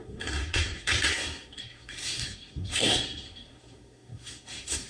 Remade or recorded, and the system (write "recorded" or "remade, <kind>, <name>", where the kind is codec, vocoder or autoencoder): remade, codec, SNAC